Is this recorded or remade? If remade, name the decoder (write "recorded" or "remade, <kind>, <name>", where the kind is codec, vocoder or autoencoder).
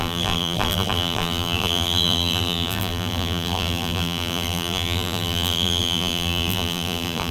remade, vocoder, BigVGAN v2